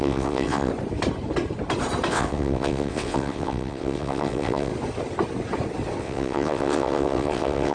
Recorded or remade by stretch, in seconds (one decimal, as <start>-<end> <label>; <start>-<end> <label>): 0.0-0.7 remade; 0.7-2.1 recorded; 2.1-4.7 remade; 4.7-6.0 recorded; 6.0-7.7 remade